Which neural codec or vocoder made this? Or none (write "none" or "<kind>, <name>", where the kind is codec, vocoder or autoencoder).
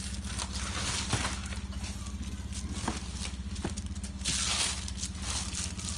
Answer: none